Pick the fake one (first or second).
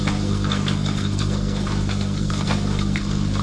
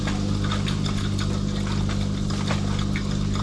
first